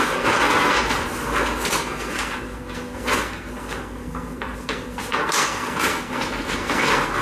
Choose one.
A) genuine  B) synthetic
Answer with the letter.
B